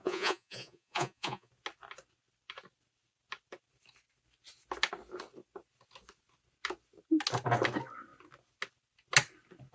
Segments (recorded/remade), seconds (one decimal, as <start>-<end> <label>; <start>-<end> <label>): 0.0-1.5 remade; 1.5-9.7 recorded